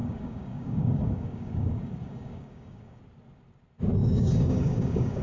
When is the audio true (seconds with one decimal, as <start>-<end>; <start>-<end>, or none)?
3.0-4.0

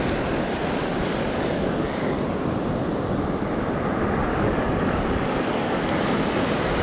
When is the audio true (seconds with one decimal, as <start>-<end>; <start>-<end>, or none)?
0.0-0.9; 2.2-4.3; 6.0-6.8

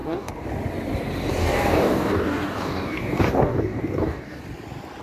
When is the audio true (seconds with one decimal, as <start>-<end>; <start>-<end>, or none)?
0.5-1.4; 4.4-5.0

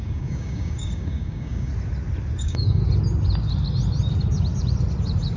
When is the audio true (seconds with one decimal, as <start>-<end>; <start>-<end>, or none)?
1.7-2.4; 2.8-5.4

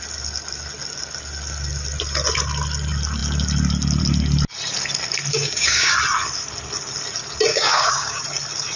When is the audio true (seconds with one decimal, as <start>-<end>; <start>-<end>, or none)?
0.0-5.3; 5.9-7.5; 8.2-8.8

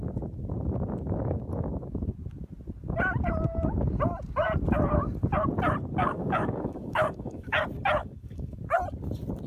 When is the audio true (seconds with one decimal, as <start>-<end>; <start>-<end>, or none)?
0.0-6.0; 7.6-8.0; 8.6-9.5